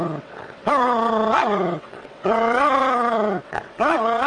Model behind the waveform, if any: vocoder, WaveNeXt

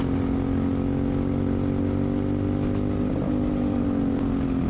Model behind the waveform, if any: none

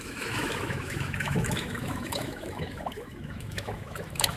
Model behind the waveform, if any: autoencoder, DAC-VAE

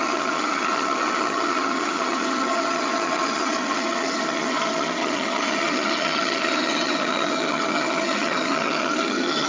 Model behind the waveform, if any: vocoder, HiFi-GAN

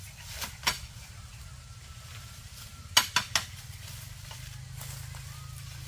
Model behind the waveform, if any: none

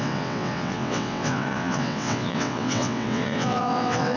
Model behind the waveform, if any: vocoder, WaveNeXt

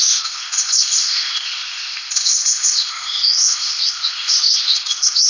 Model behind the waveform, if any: codec, ZipCodec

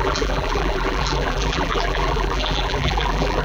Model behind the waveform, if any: vocoder, BigVGAN v2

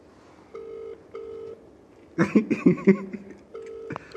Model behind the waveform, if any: none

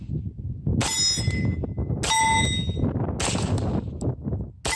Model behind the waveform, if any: none